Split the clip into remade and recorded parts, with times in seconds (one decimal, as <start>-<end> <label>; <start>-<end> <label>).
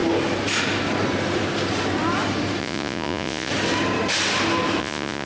0.0-2.6 recorded; 2.6-3.5 remade; 3.5-4.8 recorded; 4.8-5.3 remade